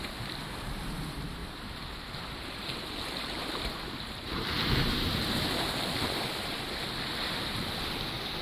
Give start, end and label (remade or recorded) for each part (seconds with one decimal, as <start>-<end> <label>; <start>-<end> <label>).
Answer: 0.0-1.4 recorded; 1.4-6.4 remade; 6.4-8.4 recorded